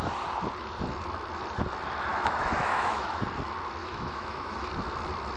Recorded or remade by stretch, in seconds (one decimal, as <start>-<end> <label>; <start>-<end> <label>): 0.0-2.1 recorded; 2.1-3.2 remade; 3.2-3.8 recorded; 3.8-4.7 remade; 4.7-5.4 recorded

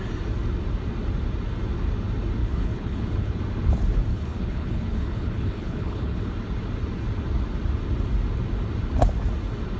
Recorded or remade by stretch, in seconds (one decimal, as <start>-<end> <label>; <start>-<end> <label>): 0.0-2.4 recorded; 2.4-3.4 remade; 3.4-4.1 recorded; 4.1-6.3 remade; 6.3-9.8 recorded